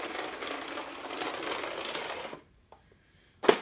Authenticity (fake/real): real